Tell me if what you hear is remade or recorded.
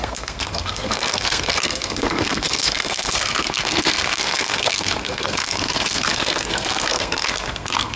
remade